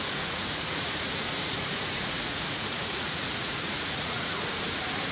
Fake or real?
fake